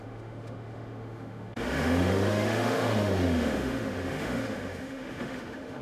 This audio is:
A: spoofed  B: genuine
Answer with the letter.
A